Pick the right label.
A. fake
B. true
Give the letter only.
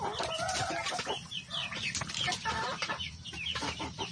A